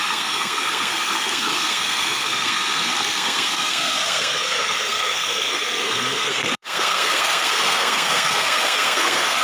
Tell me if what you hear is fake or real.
fake